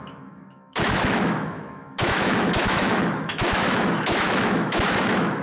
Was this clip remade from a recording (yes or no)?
yes